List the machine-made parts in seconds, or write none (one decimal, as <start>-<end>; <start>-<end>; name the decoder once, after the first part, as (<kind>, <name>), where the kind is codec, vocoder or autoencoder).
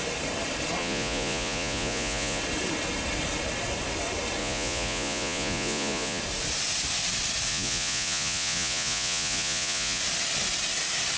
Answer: 0.8-2.4 (vocoder, Vocos); 4.4-6.2; 7.5-10.0